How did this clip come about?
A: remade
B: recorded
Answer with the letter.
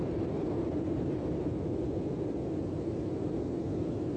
B